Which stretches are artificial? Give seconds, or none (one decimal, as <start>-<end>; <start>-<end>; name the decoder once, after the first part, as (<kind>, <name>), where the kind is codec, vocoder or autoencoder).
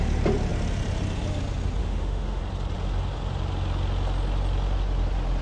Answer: 1.8-2.4 (autoencoder, DAC-VAE)